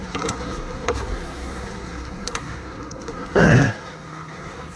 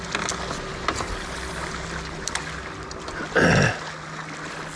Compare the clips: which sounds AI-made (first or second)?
first